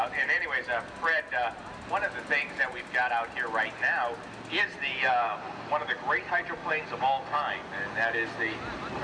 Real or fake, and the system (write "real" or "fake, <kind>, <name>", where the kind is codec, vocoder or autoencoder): real